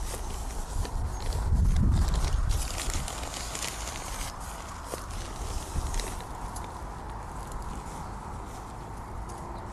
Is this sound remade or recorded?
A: recorded